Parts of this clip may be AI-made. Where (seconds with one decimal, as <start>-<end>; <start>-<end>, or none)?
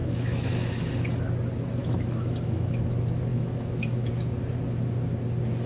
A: 0.0-0.9; 1.8-2.8; 3.3-4.1